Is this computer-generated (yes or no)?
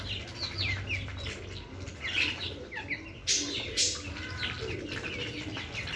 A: no